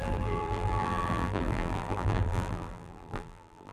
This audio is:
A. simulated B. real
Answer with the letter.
A